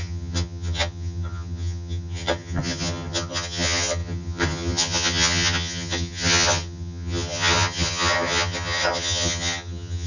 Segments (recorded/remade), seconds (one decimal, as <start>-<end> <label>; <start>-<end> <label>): 0.0-10.1 remade